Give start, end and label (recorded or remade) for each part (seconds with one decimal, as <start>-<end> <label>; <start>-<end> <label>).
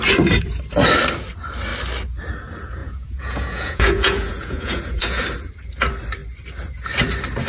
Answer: 0.0-2.8 recorded; 2.8-5.2 remade; 5.2-7.5 recorded